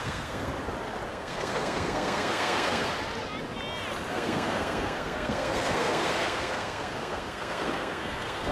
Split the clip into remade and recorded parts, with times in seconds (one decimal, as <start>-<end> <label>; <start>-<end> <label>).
0.0-0.5 remade; 0.5-1.1 recorded; 1.1-2.9 remade; 2.9-4.1 recorded; 4.1-8.5 remade

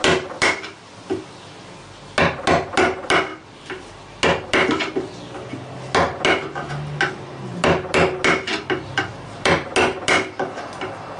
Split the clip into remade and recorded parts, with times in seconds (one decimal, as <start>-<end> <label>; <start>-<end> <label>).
0.0-11.2 recorded

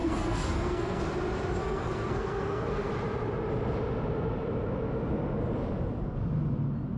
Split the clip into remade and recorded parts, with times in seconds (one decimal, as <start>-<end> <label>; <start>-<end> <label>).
0.0-1.0 remade; 1.0-1.6 recorded; 1.6-2.9 remade; 2.9-7.0 recorded

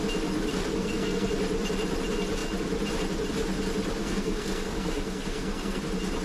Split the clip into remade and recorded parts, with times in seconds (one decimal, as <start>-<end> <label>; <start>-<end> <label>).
0.0-0.5 recorded; 0.5-1.3 remade; 1.3-4.0 recorded; 4.0-5.8 remade; 5.8-6.2 recorded

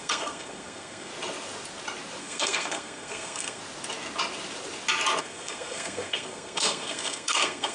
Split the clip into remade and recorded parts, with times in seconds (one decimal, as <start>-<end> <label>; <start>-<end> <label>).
0.0-1.1 remade; 1.1-2.2 recorded; 2.2-3.6 remade; 3.6-5.2 recorded; 5.2-7.7 remade

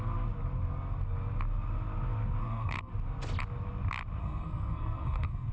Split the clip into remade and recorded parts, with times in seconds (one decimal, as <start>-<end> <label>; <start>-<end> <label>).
0.0-2.4 recorded; 2.4-2.9 remade; 2.9-4.2 recorded; 4.2-5.5 remade